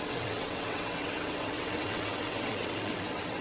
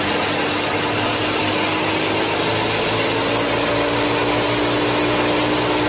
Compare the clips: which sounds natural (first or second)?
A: second